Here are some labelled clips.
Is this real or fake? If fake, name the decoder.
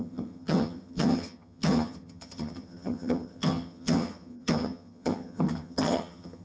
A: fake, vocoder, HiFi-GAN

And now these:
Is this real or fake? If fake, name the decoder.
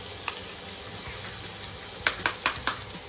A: real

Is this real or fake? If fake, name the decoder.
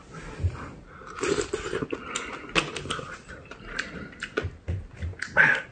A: real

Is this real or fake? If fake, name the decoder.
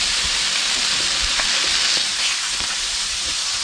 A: real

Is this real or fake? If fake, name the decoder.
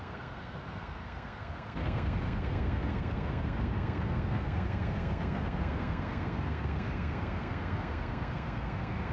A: fake, codec, SNAC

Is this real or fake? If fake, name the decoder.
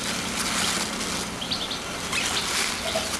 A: real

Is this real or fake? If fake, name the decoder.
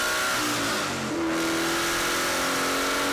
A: real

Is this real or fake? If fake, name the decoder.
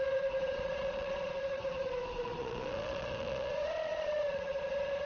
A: fake, vocoder, Vocos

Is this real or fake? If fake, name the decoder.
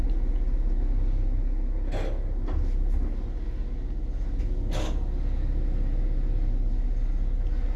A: real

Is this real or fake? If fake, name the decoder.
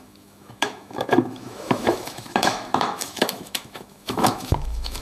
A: fake, autoencoder, DAC-VAE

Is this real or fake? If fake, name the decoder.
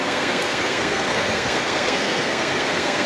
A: fake, codec, SNAC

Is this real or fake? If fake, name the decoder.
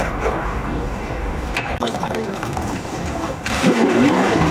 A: fake, codec, DAC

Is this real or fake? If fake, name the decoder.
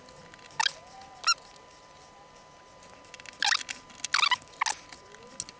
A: real